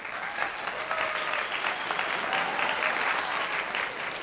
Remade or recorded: recorded